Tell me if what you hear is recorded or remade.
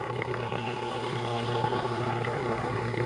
remade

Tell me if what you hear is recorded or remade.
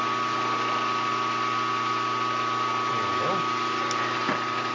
recorded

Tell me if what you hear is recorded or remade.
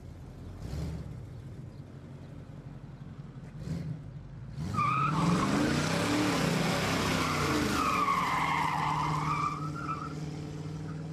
recorded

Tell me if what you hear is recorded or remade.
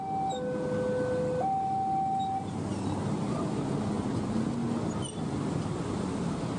recorded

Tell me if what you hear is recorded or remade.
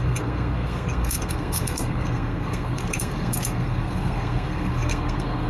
remade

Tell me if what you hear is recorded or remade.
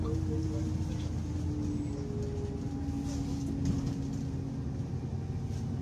recorded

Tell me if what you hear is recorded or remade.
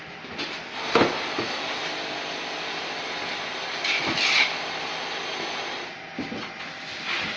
recorded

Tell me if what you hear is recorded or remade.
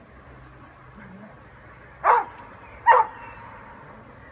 recorded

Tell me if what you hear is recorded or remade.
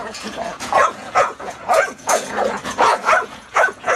remade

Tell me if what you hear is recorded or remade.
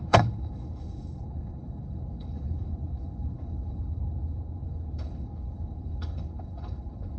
remade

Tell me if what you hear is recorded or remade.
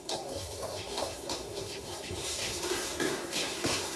remade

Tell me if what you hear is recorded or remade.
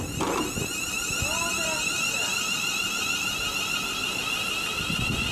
recorded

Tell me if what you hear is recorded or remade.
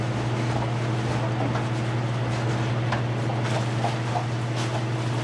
recorded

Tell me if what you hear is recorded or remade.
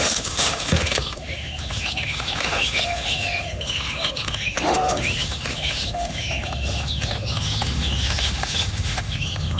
remade